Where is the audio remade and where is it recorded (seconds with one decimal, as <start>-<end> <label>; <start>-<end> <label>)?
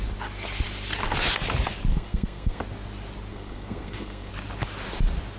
0.0-1.9 recorded; 1.9-2.6 remade; 2.6-3.3 recorded; 3.3-4.3 remade; 4.3-5.4 recorded